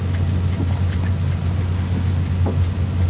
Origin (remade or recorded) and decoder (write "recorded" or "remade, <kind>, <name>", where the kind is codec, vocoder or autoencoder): recorded